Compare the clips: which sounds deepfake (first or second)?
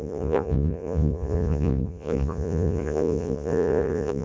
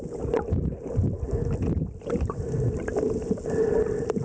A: first